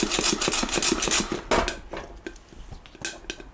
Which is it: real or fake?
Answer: real